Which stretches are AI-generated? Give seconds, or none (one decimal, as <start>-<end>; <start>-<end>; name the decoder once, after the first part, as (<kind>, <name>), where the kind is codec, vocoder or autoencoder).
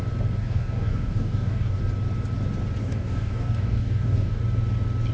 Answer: 0.4-1.8 (codec, DAC); 2.8-4.4